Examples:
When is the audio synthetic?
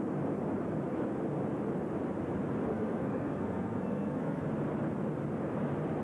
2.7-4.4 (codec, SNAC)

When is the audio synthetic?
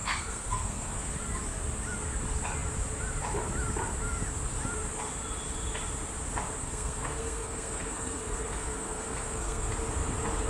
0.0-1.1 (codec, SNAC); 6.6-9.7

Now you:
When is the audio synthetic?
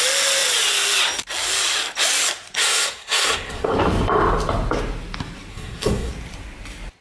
2.6-3.7 (codec, SNAC); 5.5-6.1